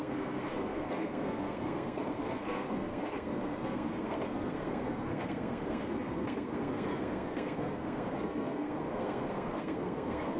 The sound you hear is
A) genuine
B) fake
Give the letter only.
B